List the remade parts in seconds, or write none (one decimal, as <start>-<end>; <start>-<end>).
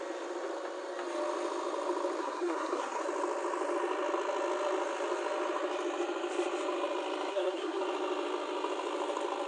2.2-3.0; 7.3-7.8